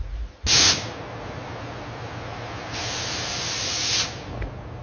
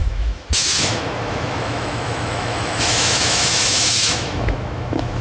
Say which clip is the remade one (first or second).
second